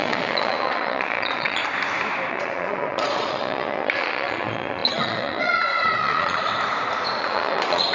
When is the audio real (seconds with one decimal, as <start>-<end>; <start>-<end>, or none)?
1.6-2.3; 6.5-7.2